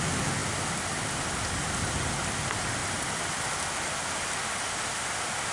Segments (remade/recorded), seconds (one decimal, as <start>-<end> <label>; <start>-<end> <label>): 0.0-5.5 recorded